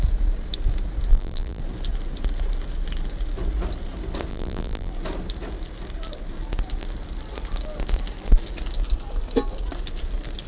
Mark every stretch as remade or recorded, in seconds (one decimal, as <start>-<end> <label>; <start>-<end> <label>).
0.0-1.1 recorded; 1.1-1.6 remade; 1.6-4.3 recorded; 4.3-4.9 remade; 4.9-10.5 recorded